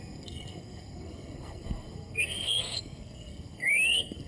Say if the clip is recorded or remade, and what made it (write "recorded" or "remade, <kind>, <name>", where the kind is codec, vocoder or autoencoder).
remade, codec, SNAC